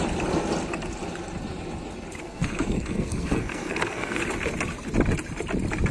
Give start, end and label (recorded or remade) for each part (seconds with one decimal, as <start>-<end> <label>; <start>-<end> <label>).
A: 0.0-2.2 recorded; 2.2-4.2 remade; 4.2-5.9 recorded